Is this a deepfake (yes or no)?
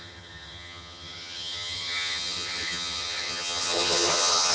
yes